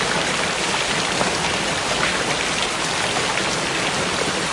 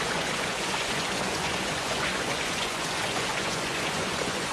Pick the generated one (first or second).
second